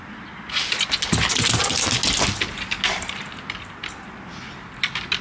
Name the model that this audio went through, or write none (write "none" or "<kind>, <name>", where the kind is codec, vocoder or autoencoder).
none